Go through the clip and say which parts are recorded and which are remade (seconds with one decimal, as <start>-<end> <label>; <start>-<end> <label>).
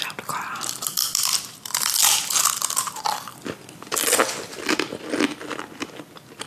0.0-6.5 recorded